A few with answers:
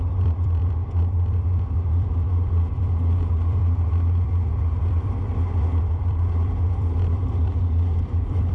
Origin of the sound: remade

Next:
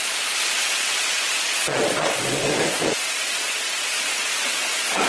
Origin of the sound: remade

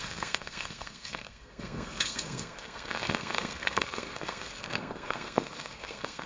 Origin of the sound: remade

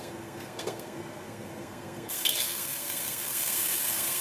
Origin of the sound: remade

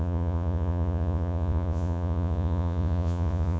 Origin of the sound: remade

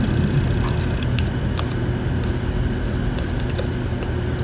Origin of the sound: recorded